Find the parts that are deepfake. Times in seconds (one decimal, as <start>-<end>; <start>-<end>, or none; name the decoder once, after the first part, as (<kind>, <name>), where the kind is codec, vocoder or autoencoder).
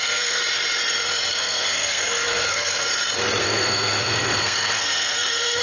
0.0-0.4 (codec, SNAC); 1.3-2.9; 3.4-5.6